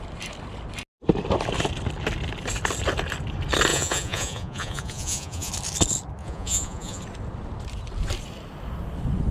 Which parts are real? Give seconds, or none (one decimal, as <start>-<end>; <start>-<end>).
0.0-3.7; 5.5-6.2; 7.0-9.3